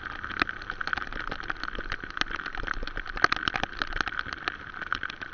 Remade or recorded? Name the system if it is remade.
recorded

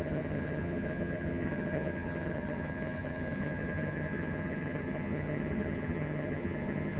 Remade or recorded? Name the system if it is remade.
remade, vocoder, HiFi-GAN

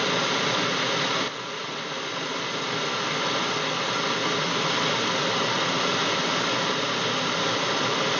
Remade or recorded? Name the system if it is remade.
recorded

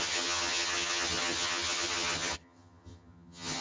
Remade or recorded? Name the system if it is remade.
remade, vocoder, HiFi-GAN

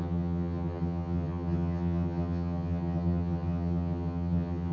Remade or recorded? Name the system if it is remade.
remade, vocoder, HiFi-GAN